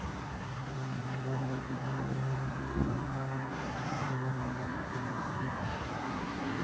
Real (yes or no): no